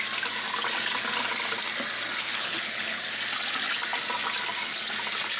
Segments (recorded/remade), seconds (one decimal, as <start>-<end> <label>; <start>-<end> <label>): 0.0-2.2 recorded; 2.2-3.0 remade; 3.0-5.4 recorded